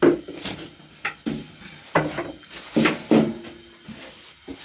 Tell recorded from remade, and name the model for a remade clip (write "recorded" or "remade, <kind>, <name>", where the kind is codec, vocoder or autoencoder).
recorded